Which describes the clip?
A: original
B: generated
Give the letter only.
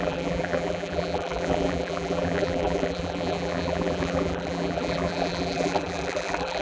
B